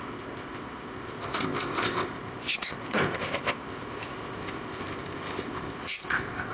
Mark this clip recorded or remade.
remade